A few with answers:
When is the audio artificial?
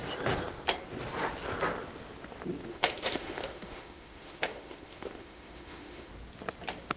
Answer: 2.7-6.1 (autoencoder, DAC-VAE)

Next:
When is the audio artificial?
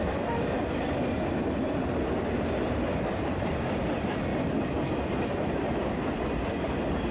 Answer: none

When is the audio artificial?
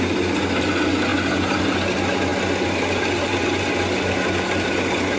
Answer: none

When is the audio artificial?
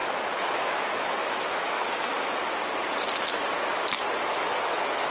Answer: 0.0-2.4 (autoencoder, DAC-VAE); 4.3-5.1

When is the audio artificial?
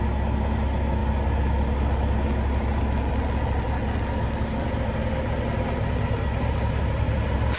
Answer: none